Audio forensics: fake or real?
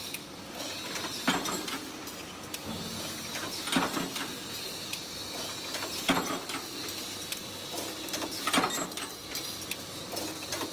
real